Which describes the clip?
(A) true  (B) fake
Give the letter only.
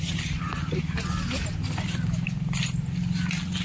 A